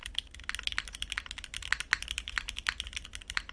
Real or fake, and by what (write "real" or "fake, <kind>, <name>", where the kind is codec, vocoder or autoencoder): real